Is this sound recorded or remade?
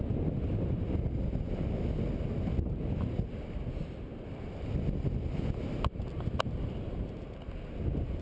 recorded